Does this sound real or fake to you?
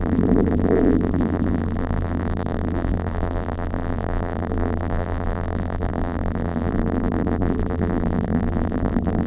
fake